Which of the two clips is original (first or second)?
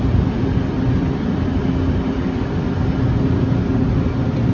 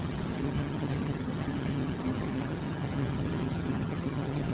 first